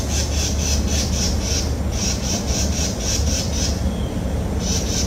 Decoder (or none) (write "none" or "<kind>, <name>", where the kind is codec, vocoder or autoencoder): none